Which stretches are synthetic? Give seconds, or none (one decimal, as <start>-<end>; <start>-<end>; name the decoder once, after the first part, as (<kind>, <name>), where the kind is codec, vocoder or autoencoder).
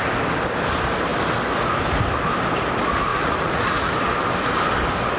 3.1-3.9 (vocoder, Vocos)